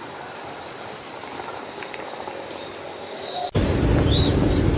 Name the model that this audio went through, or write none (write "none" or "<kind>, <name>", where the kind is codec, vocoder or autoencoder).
none